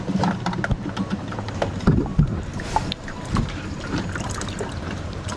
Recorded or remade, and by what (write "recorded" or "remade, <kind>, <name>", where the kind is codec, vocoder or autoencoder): remade, vocoder, BigVGAN v2